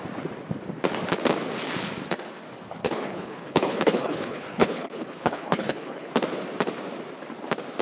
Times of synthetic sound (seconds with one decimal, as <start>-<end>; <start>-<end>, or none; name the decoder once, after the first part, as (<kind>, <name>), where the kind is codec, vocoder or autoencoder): 2.8-6.1 (codec, HILCodec)